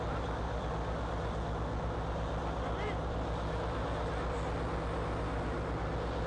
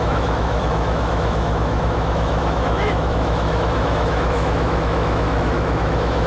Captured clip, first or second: first